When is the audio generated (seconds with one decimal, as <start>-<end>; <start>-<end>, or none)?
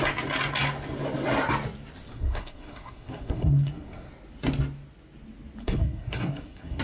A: 2.1-4.1; 5.6-6.8